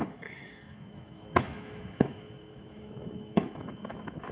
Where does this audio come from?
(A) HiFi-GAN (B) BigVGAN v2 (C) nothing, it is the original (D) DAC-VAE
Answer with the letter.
D